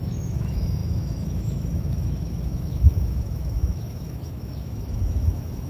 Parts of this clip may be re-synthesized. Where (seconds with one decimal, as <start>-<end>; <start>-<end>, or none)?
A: 0.0-5.7